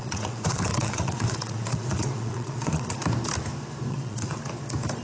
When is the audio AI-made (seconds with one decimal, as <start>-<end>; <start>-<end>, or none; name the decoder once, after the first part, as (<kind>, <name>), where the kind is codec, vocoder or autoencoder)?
0.0-3.0 (vocoder, WaveNeXt); 3.9-4.4

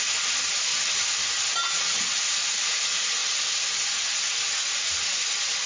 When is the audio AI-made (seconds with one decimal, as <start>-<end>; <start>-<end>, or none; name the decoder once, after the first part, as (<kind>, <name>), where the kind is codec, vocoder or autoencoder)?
none

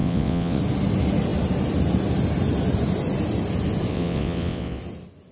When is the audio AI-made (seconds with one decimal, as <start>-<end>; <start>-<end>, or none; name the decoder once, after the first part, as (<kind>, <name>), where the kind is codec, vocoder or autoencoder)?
0.0-0.6 (vocoder, WaveNeXt); 3.9-4.8